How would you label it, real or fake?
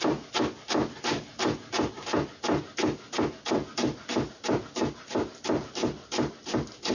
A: real